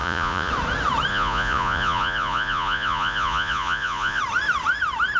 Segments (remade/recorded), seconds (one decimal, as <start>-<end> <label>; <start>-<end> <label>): 0.0-0.5 remade; 0.5-1.1 recorded; 1.1-4.2 remade; 4.2-5.2 recorded